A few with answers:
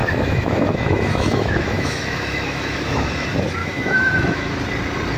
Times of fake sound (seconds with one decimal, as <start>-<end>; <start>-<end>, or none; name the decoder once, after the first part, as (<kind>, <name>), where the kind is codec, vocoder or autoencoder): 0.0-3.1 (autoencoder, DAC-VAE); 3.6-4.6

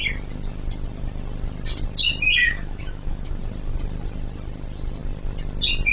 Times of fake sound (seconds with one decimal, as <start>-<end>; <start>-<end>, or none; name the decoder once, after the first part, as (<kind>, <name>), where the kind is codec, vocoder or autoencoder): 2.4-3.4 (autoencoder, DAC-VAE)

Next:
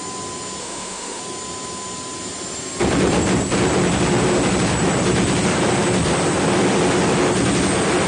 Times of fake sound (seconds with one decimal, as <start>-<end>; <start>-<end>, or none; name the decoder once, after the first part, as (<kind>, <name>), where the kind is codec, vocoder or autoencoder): 0.6-1.2 (autoencoder, DAC-VAE)